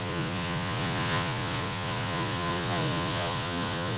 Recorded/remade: remade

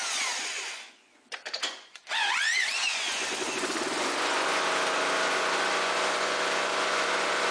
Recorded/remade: remade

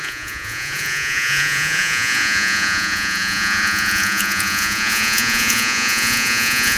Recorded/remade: remade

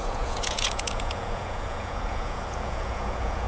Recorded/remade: remade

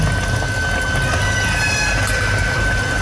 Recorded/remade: recorded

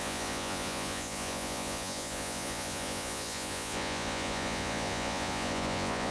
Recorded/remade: remade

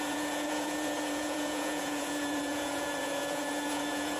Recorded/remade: remade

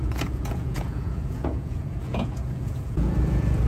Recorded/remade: remade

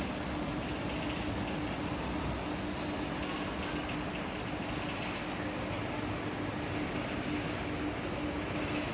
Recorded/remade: recorded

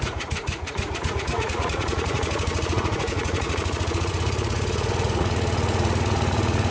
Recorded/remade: remade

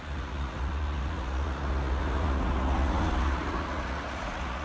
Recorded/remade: remade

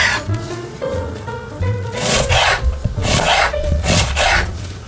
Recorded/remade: remade